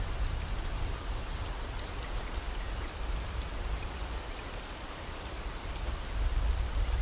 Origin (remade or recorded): recorded